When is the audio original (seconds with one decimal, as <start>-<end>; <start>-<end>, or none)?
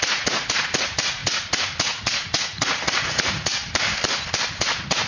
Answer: 3.6-4.6